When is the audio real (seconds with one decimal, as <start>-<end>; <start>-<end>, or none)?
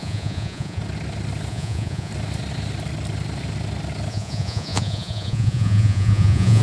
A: 0.8-1.5; 2.1-4.1